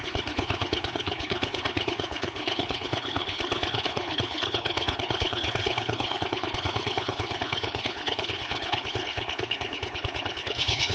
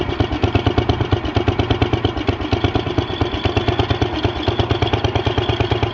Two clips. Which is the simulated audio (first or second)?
first